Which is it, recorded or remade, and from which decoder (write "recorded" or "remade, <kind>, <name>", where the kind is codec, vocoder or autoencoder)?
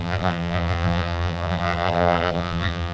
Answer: remade, vocoder, BigVGAN v2